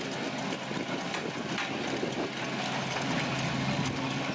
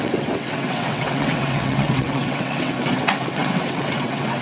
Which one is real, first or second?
first